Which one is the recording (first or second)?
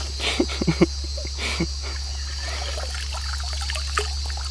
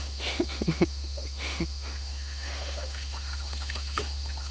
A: first